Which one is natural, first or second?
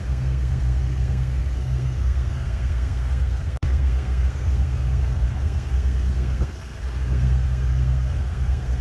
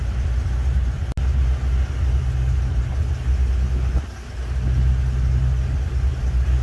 second